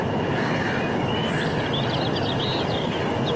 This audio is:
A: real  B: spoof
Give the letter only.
A